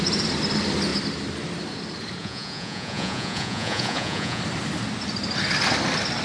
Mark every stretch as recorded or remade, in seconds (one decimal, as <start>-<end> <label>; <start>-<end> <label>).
0.0-2.2 recorded; 2.2-4.4 remade; 4.4-6.2 recorded